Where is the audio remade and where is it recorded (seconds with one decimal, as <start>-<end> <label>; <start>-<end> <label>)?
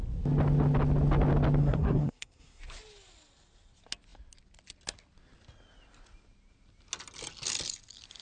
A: 0.0-1.6 recorded; 1.6-2.6 remade; 2.6-8.2 recorded